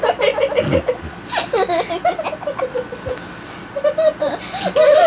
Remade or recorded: recorded